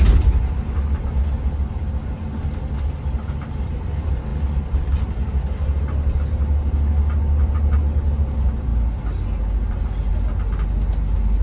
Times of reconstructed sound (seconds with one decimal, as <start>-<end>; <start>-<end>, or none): none